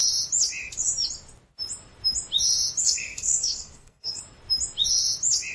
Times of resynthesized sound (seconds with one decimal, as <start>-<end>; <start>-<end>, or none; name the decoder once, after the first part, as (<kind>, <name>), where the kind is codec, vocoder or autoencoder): 2.8-4.2 (codec, SNAC)